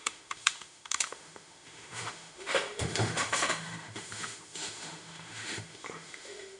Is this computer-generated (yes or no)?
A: yes